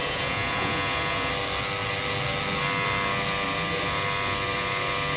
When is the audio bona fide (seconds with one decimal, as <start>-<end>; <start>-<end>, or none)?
1.3-5.2